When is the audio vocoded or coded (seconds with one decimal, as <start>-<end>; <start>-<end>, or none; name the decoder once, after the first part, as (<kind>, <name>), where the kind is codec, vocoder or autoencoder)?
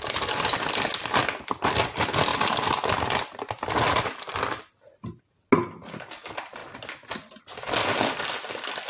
none